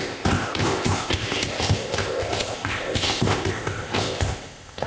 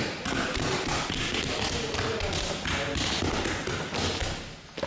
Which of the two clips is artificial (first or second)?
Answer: first